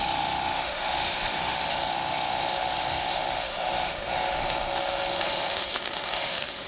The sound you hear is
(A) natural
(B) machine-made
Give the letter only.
B